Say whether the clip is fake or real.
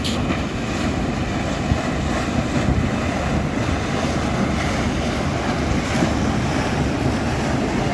real